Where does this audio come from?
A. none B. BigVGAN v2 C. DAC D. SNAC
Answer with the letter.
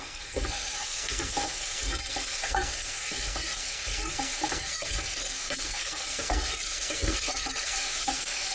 D